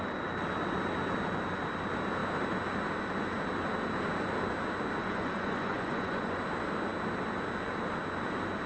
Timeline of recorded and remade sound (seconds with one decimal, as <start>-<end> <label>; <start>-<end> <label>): 0.0-5.0 recorded; 5.0-6.4 remade; 6.4-8.7 recorded